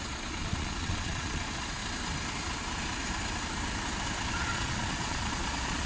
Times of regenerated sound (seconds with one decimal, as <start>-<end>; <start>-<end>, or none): 0.0-1.8; 4.3-5.9